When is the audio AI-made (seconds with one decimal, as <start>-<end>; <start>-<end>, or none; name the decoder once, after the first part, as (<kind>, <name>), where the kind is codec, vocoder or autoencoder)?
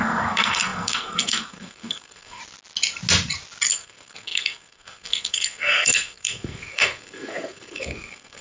0.0-2.4 (codec, SNAC); 3.7-8.4